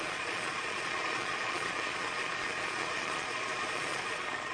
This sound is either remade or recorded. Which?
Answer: remade